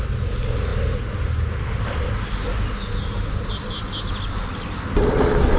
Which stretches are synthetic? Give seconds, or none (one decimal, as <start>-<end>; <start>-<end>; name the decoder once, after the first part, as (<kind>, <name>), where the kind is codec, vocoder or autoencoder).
none